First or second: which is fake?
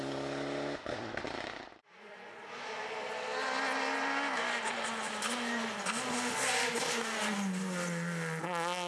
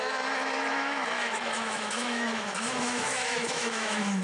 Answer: second